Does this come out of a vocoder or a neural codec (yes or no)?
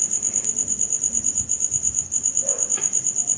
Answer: no